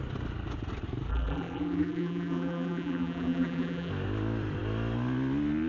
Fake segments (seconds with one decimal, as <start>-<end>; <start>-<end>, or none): 1.1-3.9